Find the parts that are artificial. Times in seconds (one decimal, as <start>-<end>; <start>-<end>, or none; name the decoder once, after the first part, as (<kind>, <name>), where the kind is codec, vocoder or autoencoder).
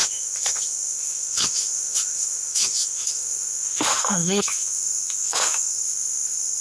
0.0-6.6 (autoencoder, DAC-VAE)